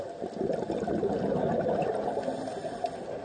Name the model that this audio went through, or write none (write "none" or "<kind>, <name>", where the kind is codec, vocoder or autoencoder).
none